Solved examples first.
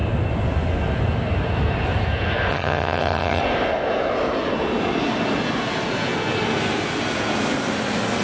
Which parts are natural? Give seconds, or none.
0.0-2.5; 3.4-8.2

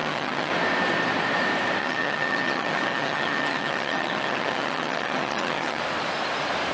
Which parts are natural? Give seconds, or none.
0.5-1.8; 5.8-6.7

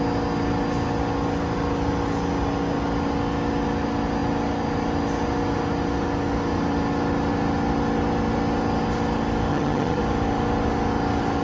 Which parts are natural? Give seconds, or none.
0.0-9.5; 10.0-11.4

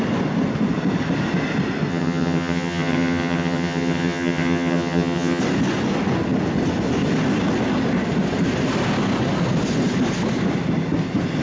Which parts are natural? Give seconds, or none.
0.0-1.9; 5.4-11.4